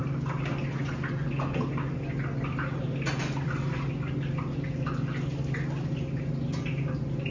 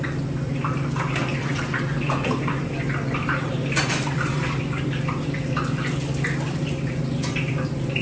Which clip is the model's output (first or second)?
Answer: second